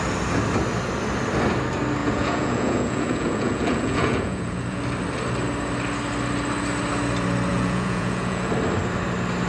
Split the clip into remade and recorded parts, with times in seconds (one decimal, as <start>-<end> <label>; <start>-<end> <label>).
0.0-2.0 recorded; 2.0-4.8 remade; 4.8-7.5 recorded; 7.5-8.5 remade; 8.5-9.5 recorded